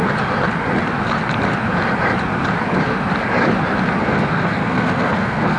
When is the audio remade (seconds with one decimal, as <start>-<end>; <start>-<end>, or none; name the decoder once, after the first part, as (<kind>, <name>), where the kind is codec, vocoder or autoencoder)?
4.0-5.6 (codec, SNAC)